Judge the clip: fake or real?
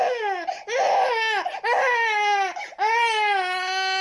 real